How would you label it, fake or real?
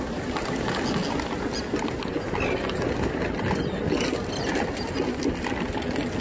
real